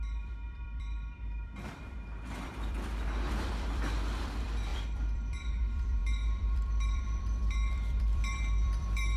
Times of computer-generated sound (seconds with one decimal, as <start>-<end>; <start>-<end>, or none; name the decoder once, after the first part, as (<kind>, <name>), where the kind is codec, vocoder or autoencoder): 0.0-9.2 (vocoder, BigVGAN v2)